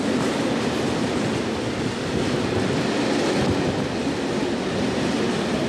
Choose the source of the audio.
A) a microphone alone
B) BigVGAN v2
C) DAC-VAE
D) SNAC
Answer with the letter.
A